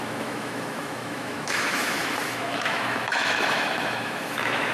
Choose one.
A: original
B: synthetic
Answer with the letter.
B